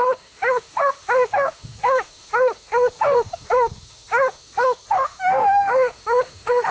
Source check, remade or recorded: remade